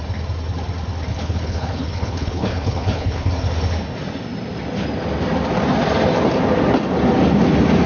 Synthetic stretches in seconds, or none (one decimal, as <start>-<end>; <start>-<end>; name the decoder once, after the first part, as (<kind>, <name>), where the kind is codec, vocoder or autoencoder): 1.1-3.3 (codec, HILCodec)